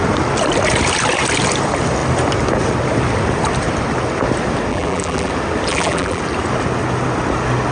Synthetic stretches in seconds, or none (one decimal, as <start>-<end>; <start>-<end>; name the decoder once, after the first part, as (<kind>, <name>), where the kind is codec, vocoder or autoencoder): 4.7-5.3 (vocoder, BigVGAN v2); 5.7-6.2